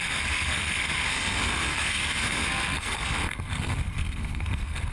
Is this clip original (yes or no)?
no